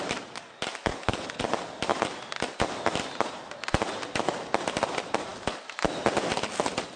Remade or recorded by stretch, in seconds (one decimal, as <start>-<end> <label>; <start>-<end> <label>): 0.0-0.9 recorded; 0.9-1.4 remade; 1.4-7.0 recorded